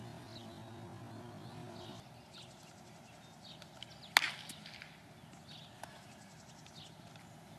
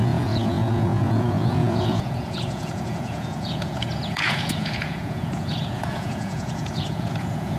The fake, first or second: second